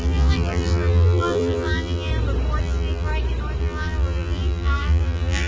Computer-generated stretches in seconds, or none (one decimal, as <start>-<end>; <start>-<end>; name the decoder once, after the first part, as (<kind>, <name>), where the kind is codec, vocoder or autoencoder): 0.0-2.1 (vocoder, BigVGAN v2); 2.6-3.1; 3.6-5.5